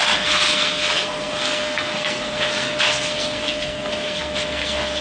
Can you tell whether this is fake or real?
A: fake